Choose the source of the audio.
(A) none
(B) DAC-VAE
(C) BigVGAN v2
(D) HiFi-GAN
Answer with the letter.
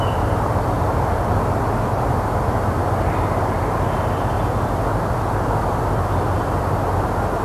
A